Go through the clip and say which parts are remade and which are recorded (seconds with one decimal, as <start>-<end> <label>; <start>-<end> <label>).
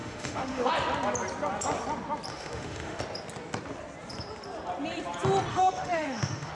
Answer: 0.0-0.7 remade; 0.7-2.3 recorded; 2.3-3.0 remade; 3.0-5.5 recorded; 5.5-6.5 remade